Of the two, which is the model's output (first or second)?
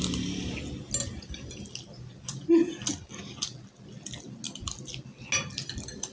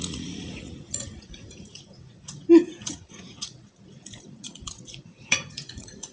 second